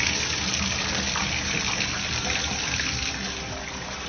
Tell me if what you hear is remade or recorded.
recorded